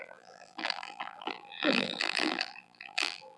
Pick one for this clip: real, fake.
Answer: fake